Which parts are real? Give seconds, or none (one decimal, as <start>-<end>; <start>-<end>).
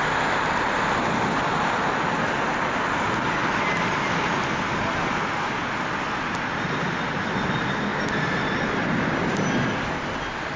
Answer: 0.0-10.6